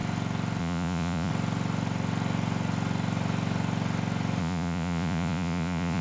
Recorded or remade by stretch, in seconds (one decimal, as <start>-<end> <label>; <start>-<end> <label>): 0.0-0.6 recorded; 0.6-1.3 remade; 1.3-4.4 recorded; 4.4-6.0 remade